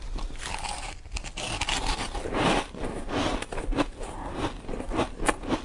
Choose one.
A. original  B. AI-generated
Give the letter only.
A